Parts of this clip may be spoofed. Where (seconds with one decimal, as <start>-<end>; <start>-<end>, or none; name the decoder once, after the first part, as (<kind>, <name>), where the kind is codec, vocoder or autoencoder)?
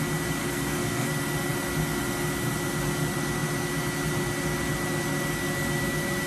0.4-1.1 (codec, SNAC)